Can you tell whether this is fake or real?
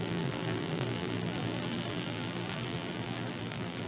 fake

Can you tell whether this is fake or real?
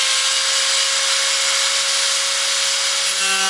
real